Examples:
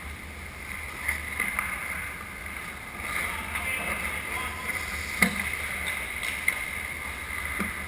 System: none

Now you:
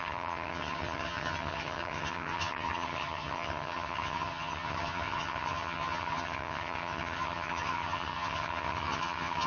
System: vocoder, HiFi-GAN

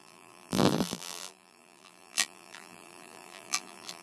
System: vocoder, BigVGAN v2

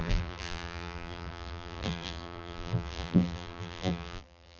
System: vocoder, BigVGAN v2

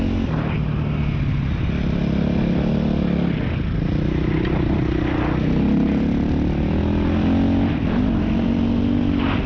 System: none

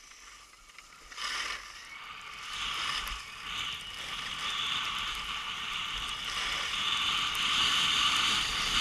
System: none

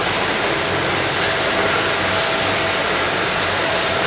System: none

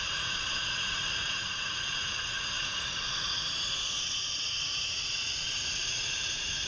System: vocoder, Vocos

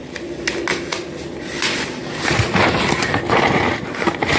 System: none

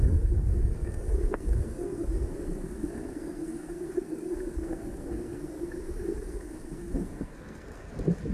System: codec, SNAC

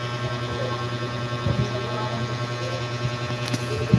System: none